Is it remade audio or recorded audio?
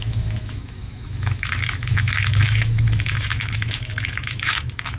remade